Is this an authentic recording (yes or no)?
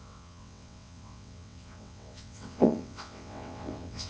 no